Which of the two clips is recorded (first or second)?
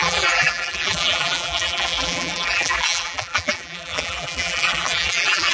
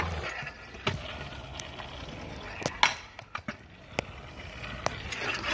second